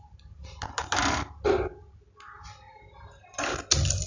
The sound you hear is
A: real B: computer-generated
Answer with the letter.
A